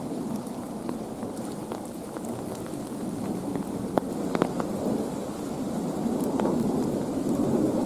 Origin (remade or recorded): remade